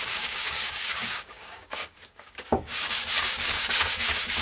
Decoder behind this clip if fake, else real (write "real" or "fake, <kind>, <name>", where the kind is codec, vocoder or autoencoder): fake, codec, DAC